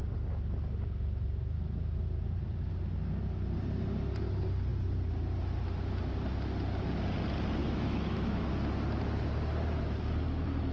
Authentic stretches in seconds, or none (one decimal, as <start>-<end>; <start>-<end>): 0.0-7.6; 8.5-10.7